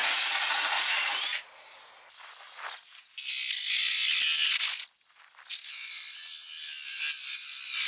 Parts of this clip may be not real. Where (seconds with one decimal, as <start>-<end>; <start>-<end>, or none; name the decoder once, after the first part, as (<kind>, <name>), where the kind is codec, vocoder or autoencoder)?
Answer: none